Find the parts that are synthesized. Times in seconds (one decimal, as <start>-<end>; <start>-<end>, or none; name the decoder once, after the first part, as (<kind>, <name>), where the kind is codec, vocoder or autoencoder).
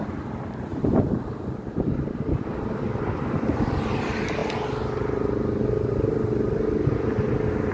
none